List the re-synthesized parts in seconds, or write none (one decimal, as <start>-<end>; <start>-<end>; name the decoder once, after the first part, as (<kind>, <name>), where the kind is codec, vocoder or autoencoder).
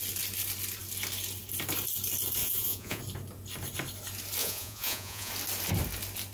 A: 2.4-3.0 (vocoder, Vocos); 4.4-5.3